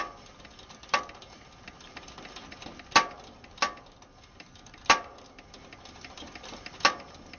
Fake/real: real